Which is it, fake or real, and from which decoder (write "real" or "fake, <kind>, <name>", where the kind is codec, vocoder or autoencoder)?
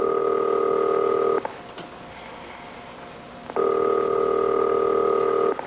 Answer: real